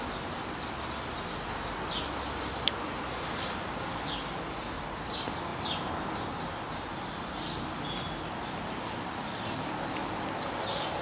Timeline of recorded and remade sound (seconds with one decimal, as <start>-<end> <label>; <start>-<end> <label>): 0.0-11.0 recorded